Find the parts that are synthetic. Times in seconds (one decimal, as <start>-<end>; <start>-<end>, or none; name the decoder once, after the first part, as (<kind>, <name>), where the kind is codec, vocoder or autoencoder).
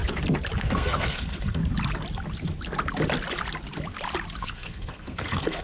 0.6-1.6 (codec, SNAC); 4.4-5.6